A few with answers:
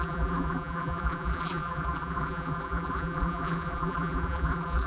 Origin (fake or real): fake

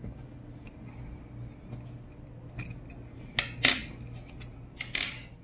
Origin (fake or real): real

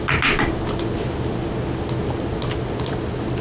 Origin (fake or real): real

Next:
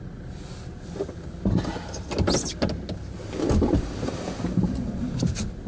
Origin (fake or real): real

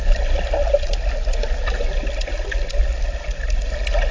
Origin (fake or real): real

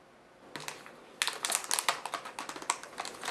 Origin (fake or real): real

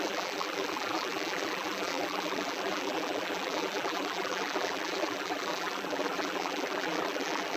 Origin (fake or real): fake